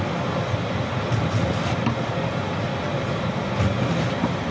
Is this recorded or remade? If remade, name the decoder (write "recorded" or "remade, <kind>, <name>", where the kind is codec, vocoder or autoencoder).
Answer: recorded